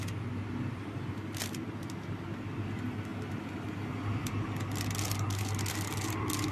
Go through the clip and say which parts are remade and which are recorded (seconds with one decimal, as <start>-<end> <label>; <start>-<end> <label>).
0.0-6.5 recorded